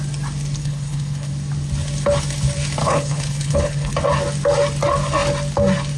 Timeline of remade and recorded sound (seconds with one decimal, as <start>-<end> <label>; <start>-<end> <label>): 0.0-0.6 recorded; 0.6-1.3 remade; 1.3-2.8 recorded; 2.8-3.9 remade; 3.9-6.0 recorded